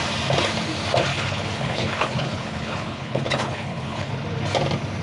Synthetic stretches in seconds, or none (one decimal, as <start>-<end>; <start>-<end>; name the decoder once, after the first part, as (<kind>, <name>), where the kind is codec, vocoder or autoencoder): 1.1-4.1 (codec, HILCodec)